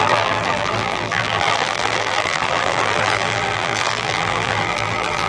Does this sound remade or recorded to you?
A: remade